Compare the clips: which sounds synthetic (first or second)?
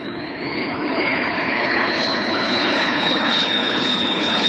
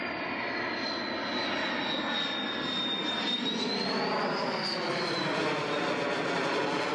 first